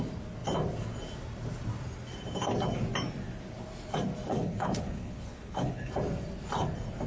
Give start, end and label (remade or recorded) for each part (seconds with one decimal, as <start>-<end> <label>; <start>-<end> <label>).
0.0-4.3 recorded; 4.3-5.9 remade; 5.9-7.1 recorded